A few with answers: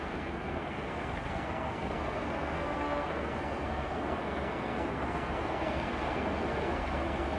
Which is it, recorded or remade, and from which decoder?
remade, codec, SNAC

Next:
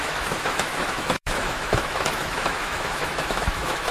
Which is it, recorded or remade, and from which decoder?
remade, autoencoder, DAC-VAE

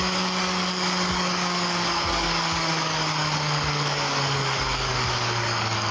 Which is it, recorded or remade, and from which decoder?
remade, codec, DAC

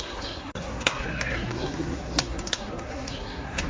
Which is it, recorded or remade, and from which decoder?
remade, codec, SNAC